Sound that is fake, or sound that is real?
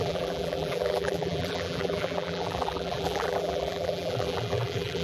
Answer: fake